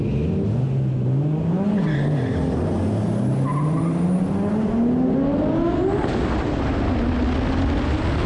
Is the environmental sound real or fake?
real